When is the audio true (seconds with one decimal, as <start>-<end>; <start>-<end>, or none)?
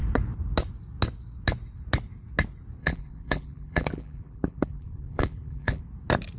0.0-2.8; 5.8-6.4